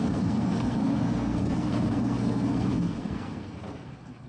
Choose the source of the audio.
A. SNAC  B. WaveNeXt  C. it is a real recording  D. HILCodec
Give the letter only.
A